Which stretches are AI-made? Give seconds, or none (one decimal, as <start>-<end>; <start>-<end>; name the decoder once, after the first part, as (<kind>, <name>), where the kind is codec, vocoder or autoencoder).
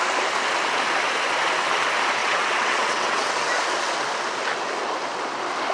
2.2-3.3 (vocoder, WaveNeXt)